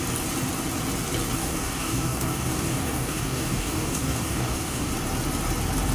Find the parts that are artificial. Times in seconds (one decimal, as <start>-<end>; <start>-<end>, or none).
1.4-4.9